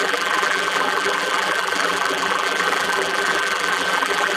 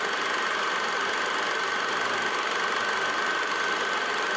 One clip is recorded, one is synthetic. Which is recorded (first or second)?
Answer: second